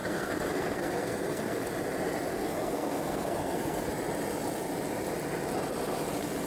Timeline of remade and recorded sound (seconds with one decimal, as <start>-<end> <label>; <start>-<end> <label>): 0.0-1.7 remade; 1.7-2.3 recorded; 2.3-3.9 remade; 3.9-6.5 recorded